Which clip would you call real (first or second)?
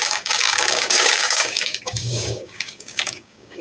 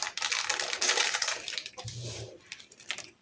second